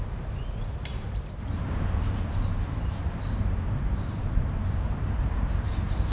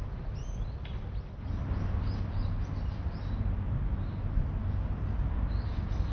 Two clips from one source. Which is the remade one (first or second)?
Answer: first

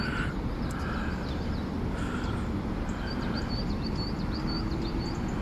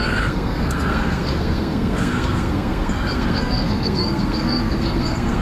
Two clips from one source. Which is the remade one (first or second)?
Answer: second